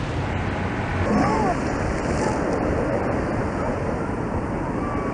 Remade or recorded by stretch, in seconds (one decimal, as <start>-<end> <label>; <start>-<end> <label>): 0.0-5.1 recorded